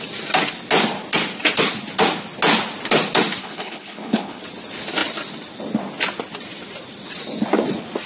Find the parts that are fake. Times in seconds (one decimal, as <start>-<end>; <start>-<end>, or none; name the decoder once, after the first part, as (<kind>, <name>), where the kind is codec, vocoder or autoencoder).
3.4-4.4 (codec, HILCodec)